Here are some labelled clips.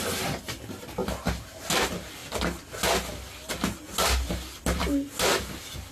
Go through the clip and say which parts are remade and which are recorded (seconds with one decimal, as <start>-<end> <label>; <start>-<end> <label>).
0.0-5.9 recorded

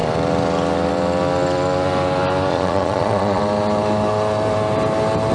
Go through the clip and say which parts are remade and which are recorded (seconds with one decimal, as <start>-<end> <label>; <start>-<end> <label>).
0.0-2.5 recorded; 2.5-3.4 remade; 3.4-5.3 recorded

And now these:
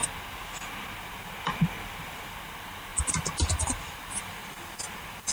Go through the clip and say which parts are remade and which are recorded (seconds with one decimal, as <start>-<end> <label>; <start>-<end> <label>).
0.0-2.9 recorded; 2.9-5.3 remade

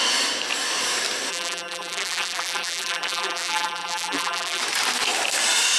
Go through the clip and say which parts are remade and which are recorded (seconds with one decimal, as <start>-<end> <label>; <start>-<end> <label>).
0.0-1.3 recorded; 1.3-4.6 remade; 4.6-5.8 recorded

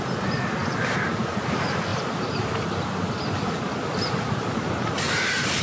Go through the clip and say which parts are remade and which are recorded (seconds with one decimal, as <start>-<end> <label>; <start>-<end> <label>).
0.0-1.9 recorded; 1.9-5.6 remade